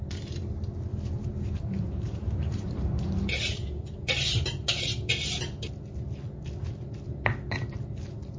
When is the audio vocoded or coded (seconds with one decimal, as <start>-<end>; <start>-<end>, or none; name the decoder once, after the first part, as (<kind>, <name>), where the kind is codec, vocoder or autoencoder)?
0.9-5.4 (vocoder, BigVGAN v2)